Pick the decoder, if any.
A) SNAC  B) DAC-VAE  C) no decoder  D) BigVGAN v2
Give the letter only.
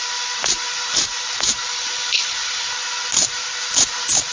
D